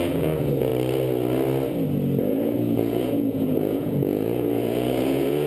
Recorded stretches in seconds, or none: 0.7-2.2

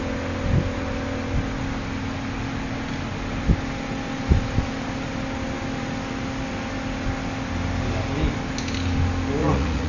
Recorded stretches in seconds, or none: 0.0-9.4

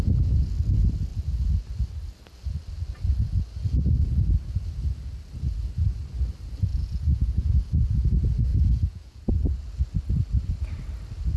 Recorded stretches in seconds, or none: 0.0-6.7; 7.6-8.5; 9.5-11.4

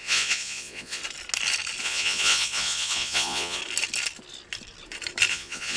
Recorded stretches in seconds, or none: 1.0-1.8; 3.6-5.3

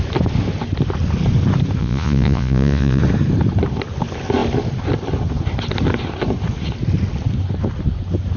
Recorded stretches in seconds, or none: 0.0-1.8; 3.0-8.4

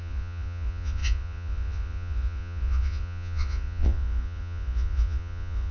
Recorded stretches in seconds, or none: none